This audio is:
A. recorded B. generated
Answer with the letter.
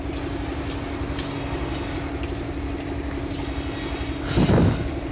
A